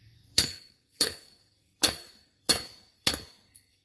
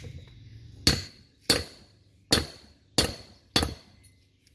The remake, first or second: first